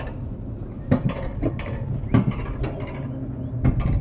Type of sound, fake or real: real